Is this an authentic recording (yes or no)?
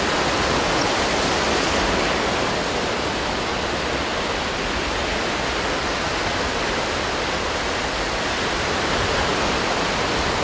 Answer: yes